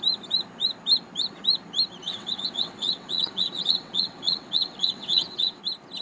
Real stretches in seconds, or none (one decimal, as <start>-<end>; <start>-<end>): 0.0-2.0; 5.6-6.0